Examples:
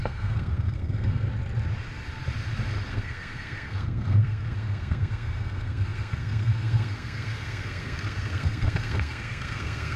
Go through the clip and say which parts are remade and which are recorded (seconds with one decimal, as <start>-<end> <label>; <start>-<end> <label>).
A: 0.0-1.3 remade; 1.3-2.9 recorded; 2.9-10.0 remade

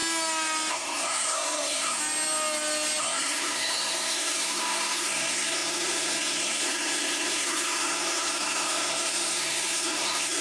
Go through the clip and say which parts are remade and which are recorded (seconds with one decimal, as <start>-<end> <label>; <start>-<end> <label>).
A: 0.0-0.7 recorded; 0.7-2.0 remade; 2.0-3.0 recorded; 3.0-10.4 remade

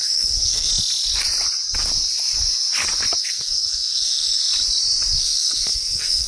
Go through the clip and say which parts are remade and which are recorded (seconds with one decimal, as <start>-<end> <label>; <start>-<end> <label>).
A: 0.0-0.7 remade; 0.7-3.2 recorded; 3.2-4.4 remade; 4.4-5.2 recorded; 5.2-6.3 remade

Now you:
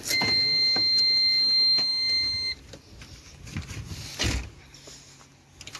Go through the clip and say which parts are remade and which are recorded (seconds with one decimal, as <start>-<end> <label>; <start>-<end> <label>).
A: 0.0-5.8 recorded